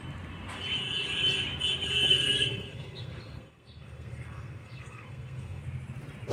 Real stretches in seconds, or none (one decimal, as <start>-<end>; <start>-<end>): 0.0-2.1; 5.6-6.3